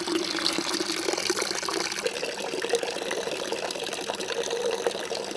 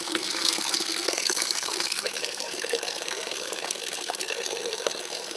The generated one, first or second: second